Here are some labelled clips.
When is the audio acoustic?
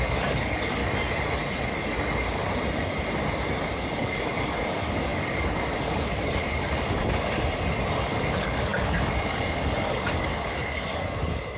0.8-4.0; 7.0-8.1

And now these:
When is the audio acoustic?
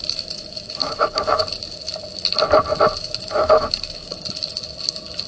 1.4-3.0; 4.2-5.3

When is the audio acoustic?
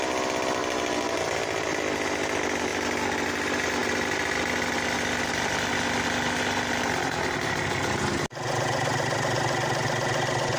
0.0-10.6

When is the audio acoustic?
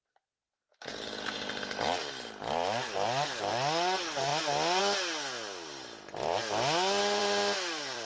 0.0-7.2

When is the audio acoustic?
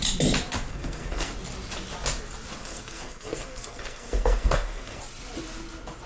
0.0-0.7; 1.3-2.6; 5.0-6.1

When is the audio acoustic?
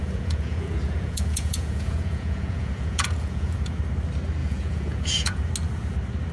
3.8-4.4; 5.5-6.3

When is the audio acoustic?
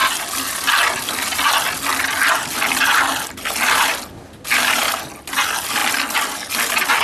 0.0-7.0